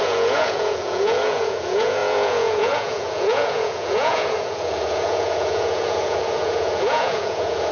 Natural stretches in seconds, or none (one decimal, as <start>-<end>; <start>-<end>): none